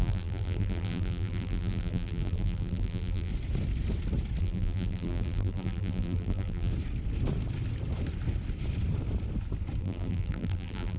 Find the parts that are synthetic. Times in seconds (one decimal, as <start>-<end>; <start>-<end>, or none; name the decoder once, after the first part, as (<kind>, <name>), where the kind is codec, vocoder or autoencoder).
0.0-3.3 (vocoder, BigVGAN v2); 4.4-6.7; 9.8-11.0

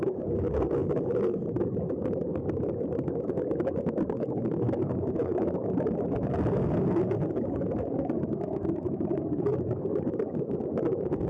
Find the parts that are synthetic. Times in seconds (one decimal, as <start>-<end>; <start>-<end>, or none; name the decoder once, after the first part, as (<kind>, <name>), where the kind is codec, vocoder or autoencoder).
0.0-11.3 (codec, DAC)

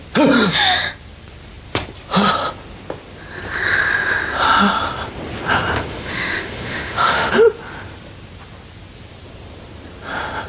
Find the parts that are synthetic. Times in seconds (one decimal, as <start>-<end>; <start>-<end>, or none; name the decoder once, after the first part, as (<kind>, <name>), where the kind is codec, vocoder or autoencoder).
5.9-7.3 (autoencoder, DAC-VAE)

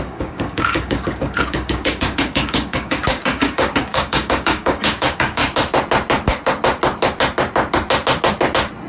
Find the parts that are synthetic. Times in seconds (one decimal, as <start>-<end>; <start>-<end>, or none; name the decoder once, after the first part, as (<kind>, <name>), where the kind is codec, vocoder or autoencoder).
0.0-5.4 (codec, DAC)

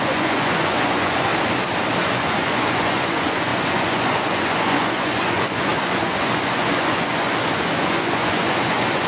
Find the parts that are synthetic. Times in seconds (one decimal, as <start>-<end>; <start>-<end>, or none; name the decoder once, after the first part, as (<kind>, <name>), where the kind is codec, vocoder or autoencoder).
0.0-1.3 (vocoder, Vocos); 2.0-9.1

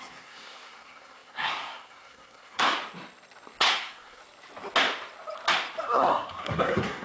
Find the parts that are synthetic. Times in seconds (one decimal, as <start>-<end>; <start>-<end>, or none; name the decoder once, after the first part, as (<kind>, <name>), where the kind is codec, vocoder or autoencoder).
0.0-2.8 (codec, SNAC); 3.7-4.2; 5.8-7.0

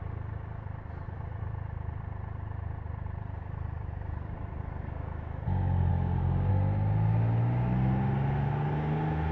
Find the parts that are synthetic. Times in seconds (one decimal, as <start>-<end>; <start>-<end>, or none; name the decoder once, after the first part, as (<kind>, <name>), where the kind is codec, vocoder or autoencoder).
5.9-6.5 (codec, DAC)

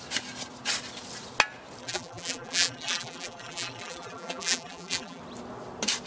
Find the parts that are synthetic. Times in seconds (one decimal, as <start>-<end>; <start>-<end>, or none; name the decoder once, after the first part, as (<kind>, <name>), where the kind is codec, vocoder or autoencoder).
1.8-5.2 (vocoder, BigVGAN v2)